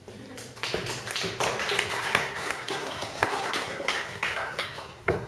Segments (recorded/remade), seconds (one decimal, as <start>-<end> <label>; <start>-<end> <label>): 0.0-1.9 recorded; 1.9-5.3 remade